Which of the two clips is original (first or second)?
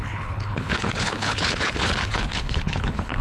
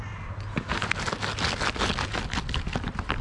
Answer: second